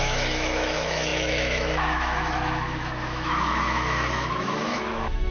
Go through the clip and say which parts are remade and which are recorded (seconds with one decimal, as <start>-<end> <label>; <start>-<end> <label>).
0.0-5.3 remade